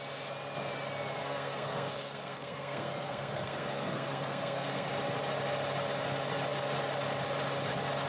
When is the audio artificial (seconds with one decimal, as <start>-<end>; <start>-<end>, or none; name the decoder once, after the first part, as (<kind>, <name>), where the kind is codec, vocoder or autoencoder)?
1.2-4.9 (codec, SNAC)